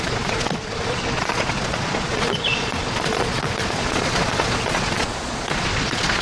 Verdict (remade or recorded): remade